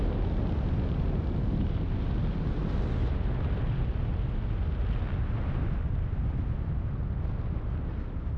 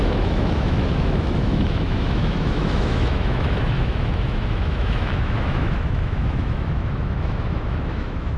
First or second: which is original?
first